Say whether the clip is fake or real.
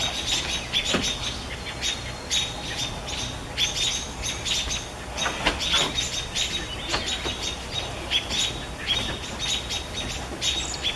real